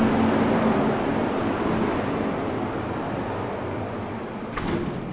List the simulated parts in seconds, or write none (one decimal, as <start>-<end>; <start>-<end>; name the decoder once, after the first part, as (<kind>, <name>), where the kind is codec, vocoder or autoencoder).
none

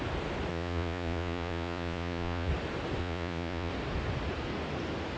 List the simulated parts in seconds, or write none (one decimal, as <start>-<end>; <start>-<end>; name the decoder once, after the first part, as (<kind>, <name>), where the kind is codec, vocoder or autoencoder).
0.5-2.5 (vocoder, Vocos); 3.0-3.7

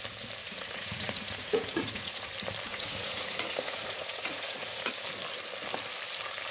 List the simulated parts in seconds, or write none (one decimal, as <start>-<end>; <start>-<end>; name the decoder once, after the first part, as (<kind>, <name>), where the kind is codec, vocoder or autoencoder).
0.4-2.3 (vocoder, Vocos); 2.7-4.9

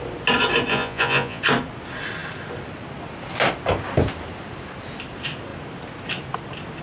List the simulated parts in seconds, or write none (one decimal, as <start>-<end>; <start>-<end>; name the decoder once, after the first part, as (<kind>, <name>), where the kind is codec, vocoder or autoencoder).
0.7-1.4 (vocoder, Vocos)

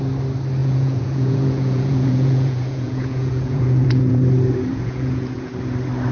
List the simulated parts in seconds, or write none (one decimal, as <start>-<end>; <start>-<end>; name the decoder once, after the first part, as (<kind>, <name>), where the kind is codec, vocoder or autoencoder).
0.6-4.2 (vocoder, Vocos); 4.7-5.5